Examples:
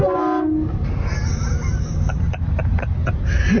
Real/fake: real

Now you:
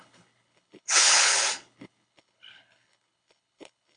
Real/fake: fake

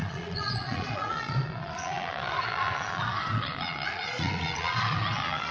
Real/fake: fake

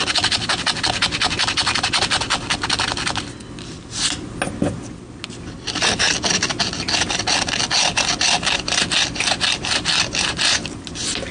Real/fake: real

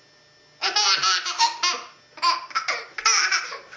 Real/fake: real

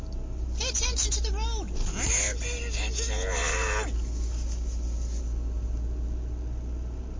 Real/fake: real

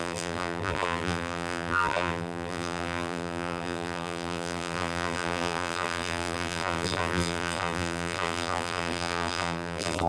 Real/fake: fake